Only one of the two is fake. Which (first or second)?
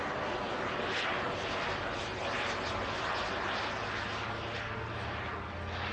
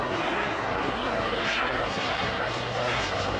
second